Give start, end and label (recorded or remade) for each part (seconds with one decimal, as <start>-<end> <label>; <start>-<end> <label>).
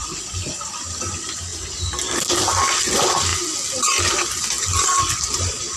0.0-1.5 remade; 1.5-2.8 recorded; 2.8-3.3 remade; 3.3-4.4 recorded; 4.4-5.8 remade